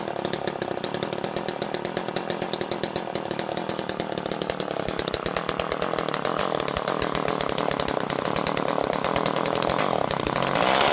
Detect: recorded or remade recorded